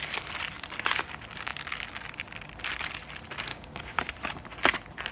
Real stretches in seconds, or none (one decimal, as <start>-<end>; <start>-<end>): 0.0-3.5; 4.0-5.1